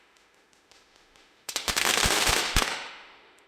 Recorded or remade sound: remade